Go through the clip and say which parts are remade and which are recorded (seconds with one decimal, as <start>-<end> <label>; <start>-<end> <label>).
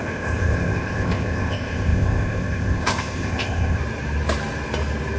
0.0-3.8 remade; 3.8-5.2 recorded